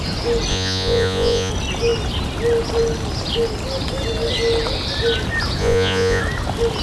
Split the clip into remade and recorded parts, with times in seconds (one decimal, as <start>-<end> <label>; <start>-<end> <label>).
0.0-0.5 recorded; 0.5-1.5 remade; 1.5-5.6 recorded; 5.6-6.2 remade; 6.2-6.8 recorded